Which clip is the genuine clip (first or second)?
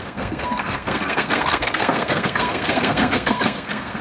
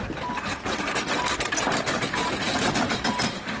second